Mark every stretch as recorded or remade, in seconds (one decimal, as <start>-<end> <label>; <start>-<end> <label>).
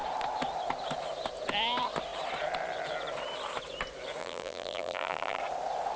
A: 0.0-4.2 recorded; 4.2-5.4 remade; 5.4-6.0 recorded